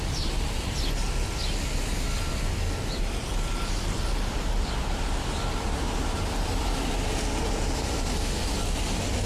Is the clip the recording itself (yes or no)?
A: yes